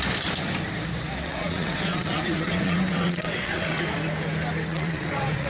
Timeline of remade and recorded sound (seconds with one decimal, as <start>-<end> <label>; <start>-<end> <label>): 0.0-1.2 recorded; 1.2-3.8 remade; 3.8-4.7 recorded; 4.7-5.5 remade